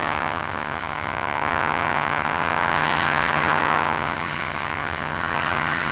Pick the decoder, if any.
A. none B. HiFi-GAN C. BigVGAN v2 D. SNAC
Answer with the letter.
B